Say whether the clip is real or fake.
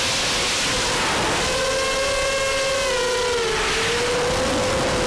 real